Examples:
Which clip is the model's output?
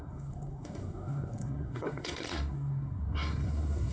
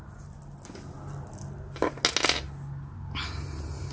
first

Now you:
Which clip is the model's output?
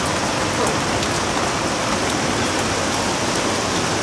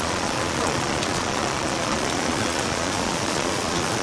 second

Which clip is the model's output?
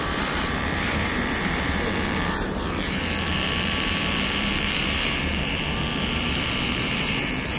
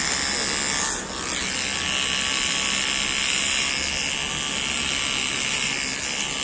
first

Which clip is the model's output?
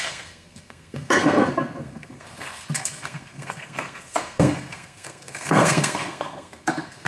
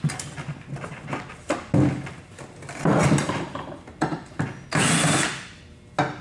first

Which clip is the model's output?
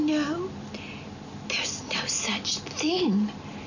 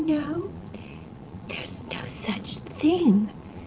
second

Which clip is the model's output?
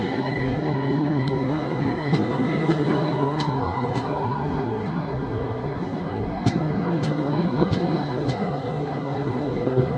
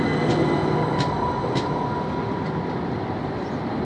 first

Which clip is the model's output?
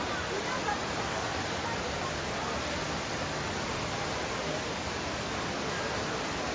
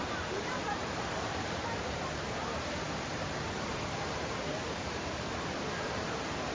second